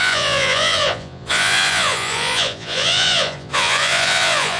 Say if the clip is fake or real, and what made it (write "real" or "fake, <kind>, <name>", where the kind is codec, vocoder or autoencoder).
fake, vocoder, Vocos